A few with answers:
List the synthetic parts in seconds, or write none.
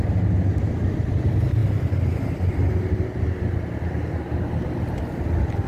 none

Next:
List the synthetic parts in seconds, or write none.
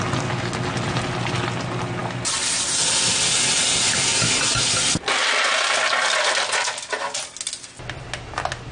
none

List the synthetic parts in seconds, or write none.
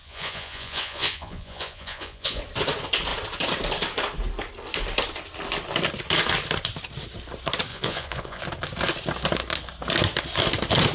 0.0-2.4 (vocoder, Vocos); 7.7-8.4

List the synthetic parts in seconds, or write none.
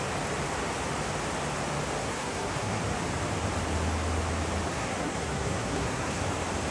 2.0-2.8 (codec, SNAC); 4.7-6.2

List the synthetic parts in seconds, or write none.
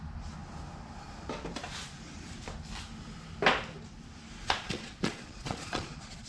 4.4-6.3 (vocoder, Vocos)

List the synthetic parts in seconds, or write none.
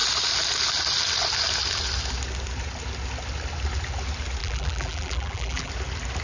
4.4-5.7 (vocoder, BigVGAN v2)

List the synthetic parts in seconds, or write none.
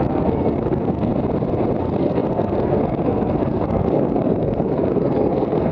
0.0-1.1 (codec, SNAC); 1.8-5.7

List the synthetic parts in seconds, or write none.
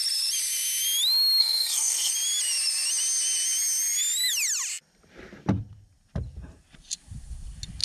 1.4-2.1 (codec, SNAC)